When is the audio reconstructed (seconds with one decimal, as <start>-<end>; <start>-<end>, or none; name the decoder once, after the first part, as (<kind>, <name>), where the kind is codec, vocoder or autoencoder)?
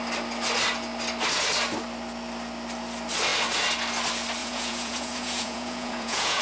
4.4-6.4 (vocoder, Vocos)